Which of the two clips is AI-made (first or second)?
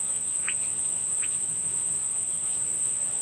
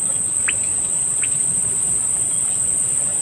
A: first